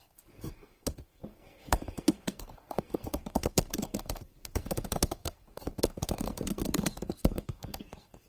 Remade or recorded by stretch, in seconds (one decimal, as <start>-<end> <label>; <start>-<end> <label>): 0.0-8.3 remade